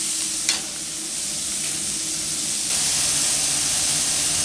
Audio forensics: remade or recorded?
recorded